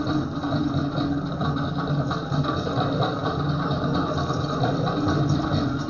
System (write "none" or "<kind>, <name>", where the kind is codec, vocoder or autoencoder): none